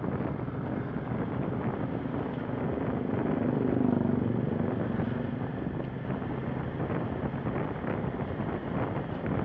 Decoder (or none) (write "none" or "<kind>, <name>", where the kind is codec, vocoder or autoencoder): none